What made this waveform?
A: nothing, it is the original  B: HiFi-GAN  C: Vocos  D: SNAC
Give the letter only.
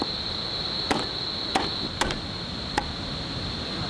A